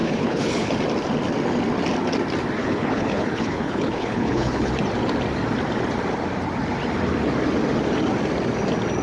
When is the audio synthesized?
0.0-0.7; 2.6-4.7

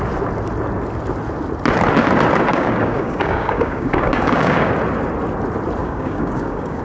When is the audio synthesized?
2.5-4.7; 5.8-6.8

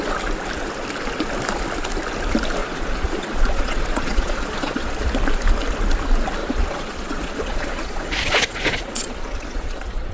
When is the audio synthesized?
2.6-4.9; 6.4-10.1

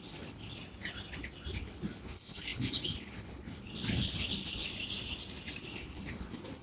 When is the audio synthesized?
0.0-0.6; 1.6-4.7; 5.6-6.6

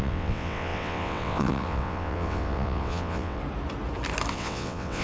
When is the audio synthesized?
0.0-3.4; 4.3-5.0

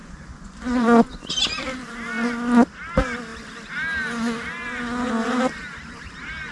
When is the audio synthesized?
0.0-1.3

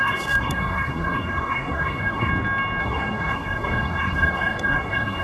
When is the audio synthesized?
0.0-2.3; 2.8-5.2